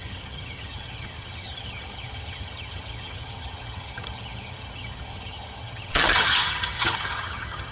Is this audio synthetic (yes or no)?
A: yes